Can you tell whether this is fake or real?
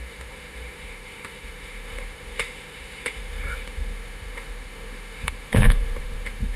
fake